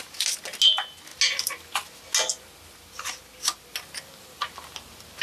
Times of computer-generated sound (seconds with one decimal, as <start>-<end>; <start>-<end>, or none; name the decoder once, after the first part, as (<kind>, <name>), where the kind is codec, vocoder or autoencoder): none